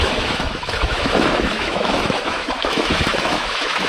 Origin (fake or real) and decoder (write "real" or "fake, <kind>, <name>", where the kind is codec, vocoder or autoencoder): fake, autoencoder, DAC-VAE